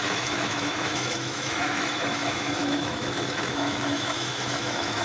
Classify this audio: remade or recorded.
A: remade